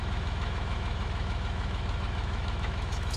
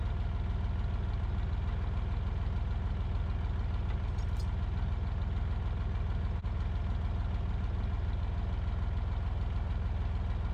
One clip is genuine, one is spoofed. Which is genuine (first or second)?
second